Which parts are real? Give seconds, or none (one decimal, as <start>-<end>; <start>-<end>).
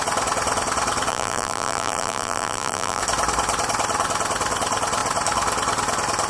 0.0-1.1; 3.0-6.3